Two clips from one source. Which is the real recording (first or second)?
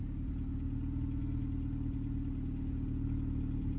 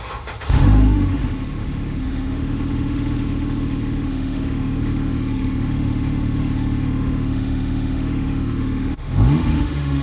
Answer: first